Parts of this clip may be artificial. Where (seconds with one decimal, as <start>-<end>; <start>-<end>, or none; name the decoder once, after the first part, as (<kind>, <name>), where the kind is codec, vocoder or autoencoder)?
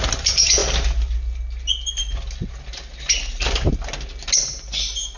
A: none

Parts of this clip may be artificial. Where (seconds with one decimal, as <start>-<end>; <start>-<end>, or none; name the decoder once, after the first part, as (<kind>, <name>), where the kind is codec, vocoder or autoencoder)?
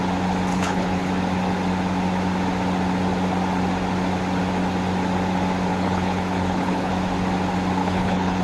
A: 0.5-1.1 (codec, HILCodec); 5.7-6.9; 7.8-8.4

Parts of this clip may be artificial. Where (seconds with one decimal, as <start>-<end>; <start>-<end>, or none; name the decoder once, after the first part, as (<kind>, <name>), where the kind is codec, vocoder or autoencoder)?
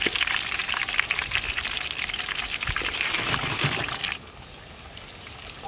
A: none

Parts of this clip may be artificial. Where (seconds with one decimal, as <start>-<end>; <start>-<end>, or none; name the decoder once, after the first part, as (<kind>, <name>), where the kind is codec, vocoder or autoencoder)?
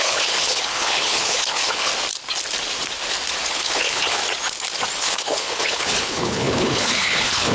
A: 0.0-1.9 (codec, HILCodec); 3.5-4.2; 5.0-7.5